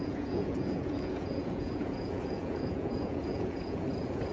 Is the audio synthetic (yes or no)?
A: yes